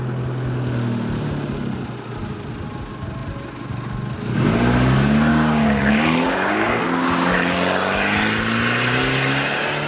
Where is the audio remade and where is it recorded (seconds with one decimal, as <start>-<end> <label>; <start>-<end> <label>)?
0.0-5.3 recorded; 5.3-6.8 remade; 6.8-9.9 recorded

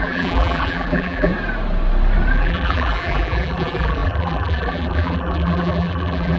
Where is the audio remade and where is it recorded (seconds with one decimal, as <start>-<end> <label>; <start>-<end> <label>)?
0.0-1.3 remade; 1.3-2.3 recorded; 2.3-6.4 remade

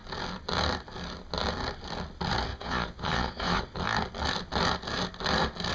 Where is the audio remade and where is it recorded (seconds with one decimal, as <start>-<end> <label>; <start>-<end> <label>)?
0.0-2.5 recorded; 2.5-3.6 remade; 3.6-5.7 recorded

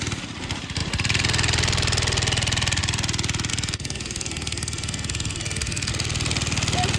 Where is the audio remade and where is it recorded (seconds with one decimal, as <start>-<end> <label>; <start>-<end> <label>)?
0.0-3.5 recorded; 3.5-5.9 remade; 5.9-7.0 recorded

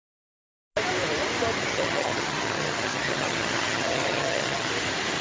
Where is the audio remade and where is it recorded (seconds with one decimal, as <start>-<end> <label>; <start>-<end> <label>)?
0.0-1.6 recorded; 1.6-4.7 remade; 4.7-5.2 recorded

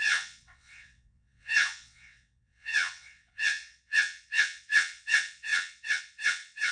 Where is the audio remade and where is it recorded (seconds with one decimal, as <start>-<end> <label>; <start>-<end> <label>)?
0.0-6.7 remade

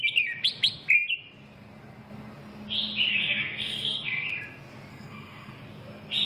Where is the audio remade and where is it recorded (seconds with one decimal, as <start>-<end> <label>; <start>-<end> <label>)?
0.0-3.1 recorded; 3.1-4.3 remade; 4.3-4.9 recorded; 4.9-5.5 remade; 5.5-6.2 recorded